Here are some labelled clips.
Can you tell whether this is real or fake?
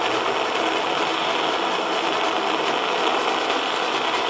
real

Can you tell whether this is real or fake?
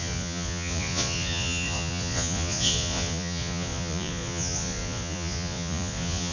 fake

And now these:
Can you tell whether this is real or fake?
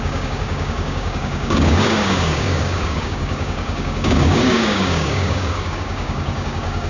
fake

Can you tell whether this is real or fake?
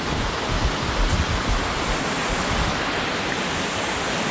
real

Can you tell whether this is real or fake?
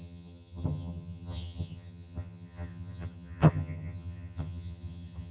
fake